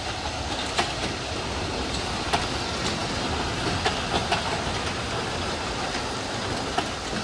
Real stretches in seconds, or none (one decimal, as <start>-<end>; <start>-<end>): 0.0-7.2